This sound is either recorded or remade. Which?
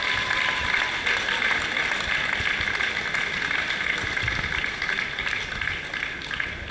recorded